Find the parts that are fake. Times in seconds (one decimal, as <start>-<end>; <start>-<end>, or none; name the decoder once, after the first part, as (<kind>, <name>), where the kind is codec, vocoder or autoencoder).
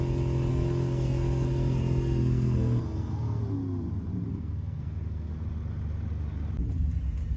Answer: 0.5-3.4 (codec, SNAC); 4.3-5.3